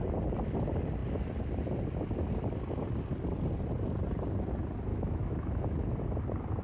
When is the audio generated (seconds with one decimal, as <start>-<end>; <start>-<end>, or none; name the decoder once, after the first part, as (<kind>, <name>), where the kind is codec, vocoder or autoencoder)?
4.9-5.9 (autoencoder, DAC-VAE)